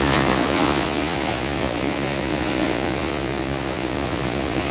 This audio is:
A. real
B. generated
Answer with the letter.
B